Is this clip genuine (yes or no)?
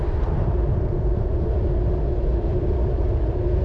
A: yes